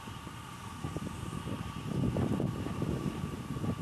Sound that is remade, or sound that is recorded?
recorded